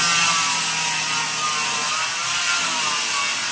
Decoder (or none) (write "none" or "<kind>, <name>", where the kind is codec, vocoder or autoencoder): none